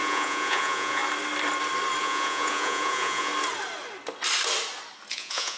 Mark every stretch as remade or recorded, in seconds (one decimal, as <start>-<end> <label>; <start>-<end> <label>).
0.0-1.0 remade; 1.0-2.0 recorded; 2.0-3.3 remade; 3.3-5.1 recorded; 5.1-5.6 remade

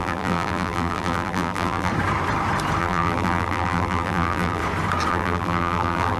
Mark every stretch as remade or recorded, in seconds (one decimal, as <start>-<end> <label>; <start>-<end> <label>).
0.0-1.9 remade; 1.9-2.8 recorded; 2.8-4.6 remade; 4.6-5.1 recorded; 5.1-6.2 remade

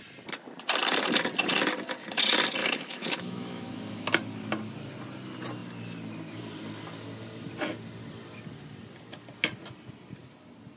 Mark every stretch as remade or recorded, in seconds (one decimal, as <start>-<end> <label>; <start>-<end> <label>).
0.0-2.6 recorded; 2.6-3.7 remade; 3.7-10.8 recorded